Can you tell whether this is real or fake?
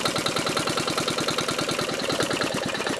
real